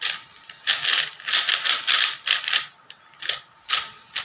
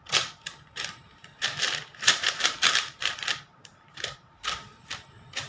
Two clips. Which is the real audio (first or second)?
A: first